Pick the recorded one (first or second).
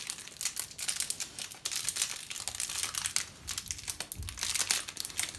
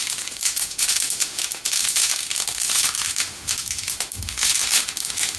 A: first